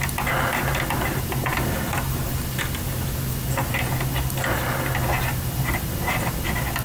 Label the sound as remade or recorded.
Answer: recorded